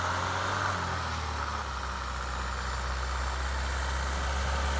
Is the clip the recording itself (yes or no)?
yes